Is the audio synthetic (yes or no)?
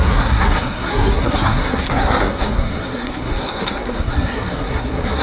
yes